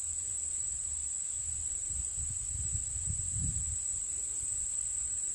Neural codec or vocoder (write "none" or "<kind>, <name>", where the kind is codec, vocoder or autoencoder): vocoder, BigVGAN v2